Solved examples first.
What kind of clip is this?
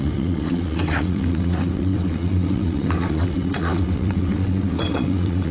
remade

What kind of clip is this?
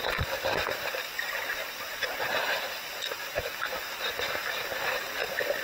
remade